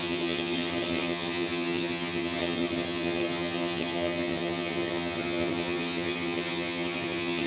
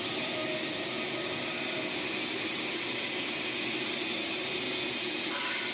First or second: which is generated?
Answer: first